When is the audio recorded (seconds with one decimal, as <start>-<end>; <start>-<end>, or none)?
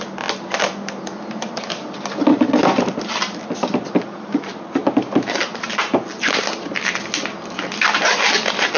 0.0-8.8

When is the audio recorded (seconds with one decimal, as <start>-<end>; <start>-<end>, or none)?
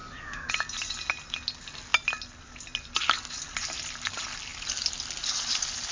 0.5-5.9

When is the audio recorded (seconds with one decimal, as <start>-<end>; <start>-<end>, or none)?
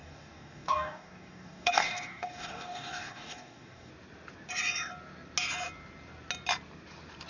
3.9-7.3